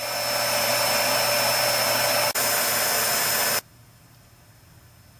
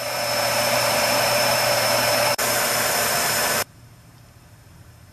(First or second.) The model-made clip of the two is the second